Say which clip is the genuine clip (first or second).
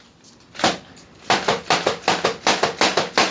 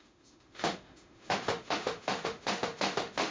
first